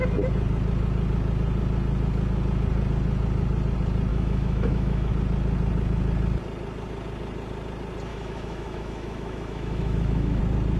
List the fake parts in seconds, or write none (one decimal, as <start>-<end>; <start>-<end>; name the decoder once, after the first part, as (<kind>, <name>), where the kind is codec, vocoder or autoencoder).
4.1-5.1 (autoencoder, DAC-VAE); 8.1-10.4